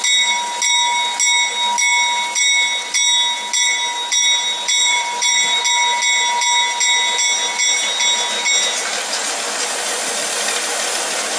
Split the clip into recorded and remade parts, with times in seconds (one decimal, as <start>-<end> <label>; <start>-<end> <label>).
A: 0.0-4.8 recorded; 4.8-5.6 remade; 5.6-11.4 recorded